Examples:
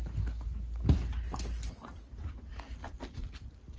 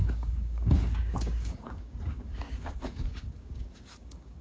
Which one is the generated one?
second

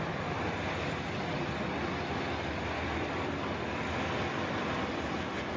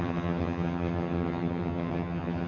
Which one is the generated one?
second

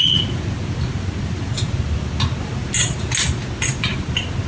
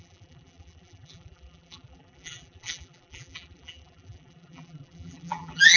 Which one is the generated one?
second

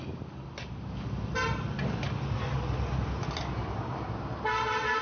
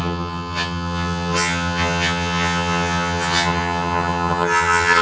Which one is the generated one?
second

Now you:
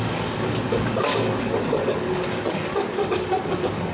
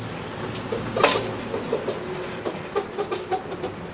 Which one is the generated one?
first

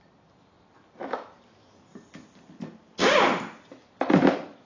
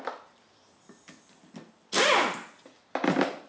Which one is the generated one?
first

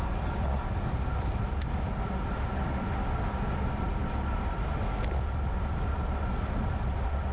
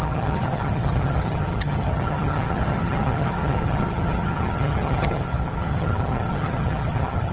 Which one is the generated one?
second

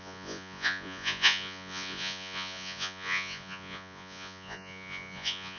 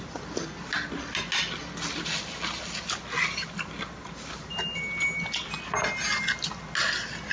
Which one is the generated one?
first